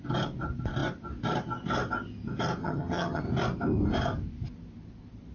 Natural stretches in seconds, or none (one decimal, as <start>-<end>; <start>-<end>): 0.0-2.6; 3.2-5.3